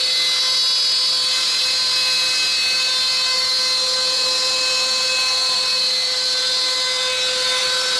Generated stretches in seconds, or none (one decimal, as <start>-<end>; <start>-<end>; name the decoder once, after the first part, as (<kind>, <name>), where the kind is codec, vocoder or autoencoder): none